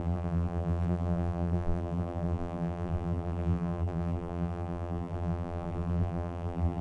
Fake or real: fake